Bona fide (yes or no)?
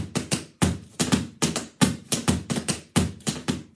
yes